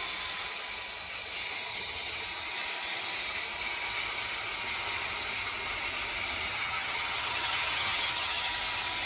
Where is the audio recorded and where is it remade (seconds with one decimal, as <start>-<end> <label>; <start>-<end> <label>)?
0.0-1.7 recorded; 1.7-2.2 remade; 2.2-6.5 recorded; 6.5-8.5 remade; 8.5-9.1 recorded